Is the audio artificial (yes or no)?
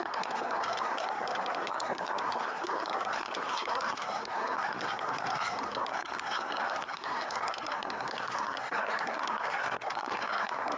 yes